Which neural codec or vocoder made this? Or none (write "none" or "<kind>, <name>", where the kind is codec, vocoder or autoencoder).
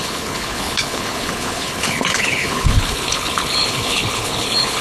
codec, HILCodec